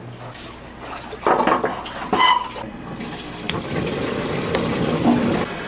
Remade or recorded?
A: recorded